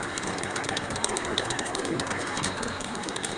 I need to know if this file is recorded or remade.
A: remade